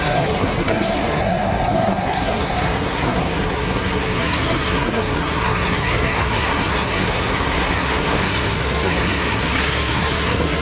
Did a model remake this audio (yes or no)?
yes